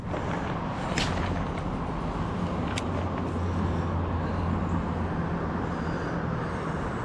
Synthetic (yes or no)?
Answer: no